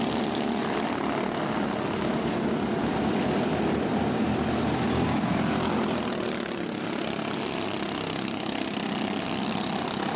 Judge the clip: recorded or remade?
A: recorded